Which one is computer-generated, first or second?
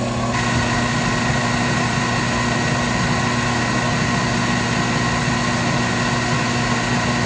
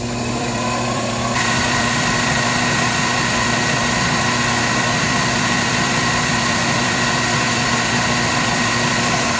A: second